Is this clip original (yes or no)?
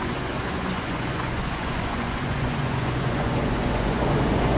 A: no